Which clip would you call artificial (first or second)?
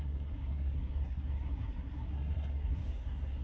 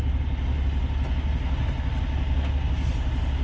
first